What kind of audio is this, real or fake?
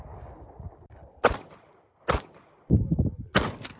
real